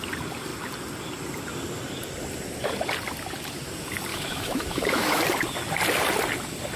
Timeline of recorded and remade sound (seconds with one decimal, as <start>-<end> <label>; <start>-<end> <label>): 0.0-4.1 recorded; 4.1-5.2 remade; 5.2-6.8 recorded